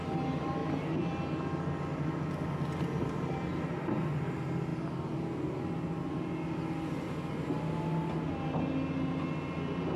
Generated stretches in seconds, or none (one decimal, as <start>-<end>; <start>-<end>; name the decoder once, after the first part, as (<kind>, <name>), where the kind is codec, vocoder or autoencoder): none